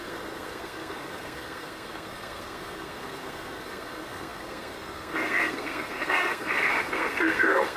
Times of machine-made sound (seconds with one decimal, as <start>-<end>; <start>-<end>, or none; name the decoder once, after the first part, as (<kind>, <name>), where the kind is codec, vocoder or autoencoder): 0.0-7.8 (codec, SNAC)